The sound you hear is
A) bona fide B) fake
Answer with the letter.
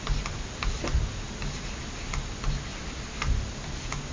A